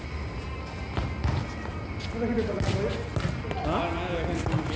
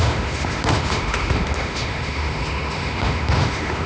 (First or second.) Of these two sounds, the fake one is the second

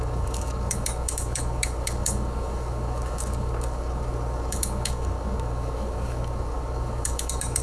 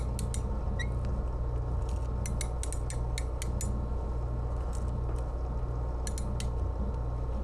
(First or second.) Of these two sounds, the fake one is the first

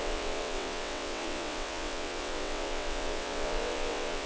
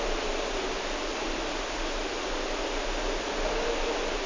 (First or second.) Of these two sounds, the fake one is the first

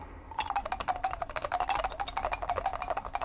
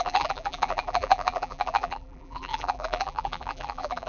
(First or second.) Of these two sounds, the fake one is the second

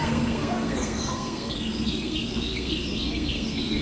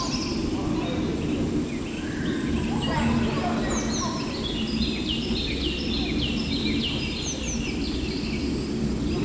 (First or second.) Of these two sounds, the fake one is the first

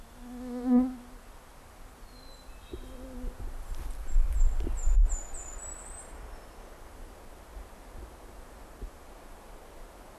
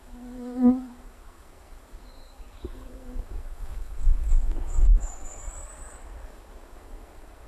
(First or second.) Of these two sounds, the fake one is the second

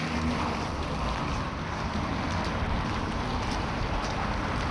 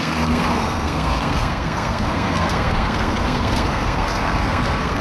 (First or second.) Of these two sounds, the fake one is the second